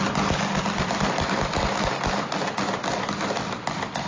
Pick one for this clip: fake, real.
real